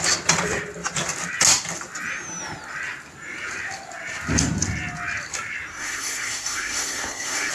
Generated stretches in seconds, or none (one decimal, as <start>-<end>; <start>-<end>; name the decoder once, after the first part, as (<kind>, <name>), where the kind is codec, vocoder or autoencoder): 5.7-7.5 (codec, SNAC)